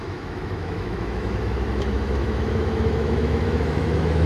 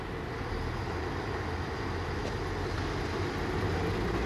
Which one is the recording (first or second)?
second